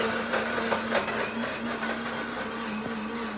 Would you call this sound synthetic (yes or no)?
no